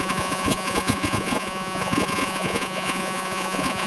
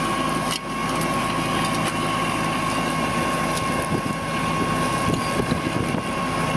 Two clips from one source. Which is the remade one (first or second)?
first